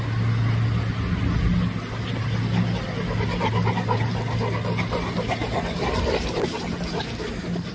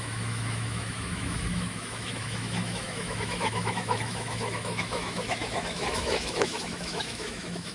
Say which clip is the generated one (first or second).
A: second